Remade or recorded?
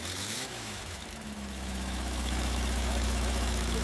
remade